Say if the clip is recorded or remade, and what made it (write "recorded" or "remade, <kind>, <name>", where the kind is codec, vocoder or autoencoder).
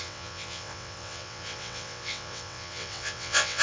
remade, vocoder, WaveNeXt